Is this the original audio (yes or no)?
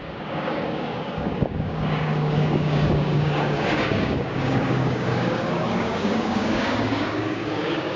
no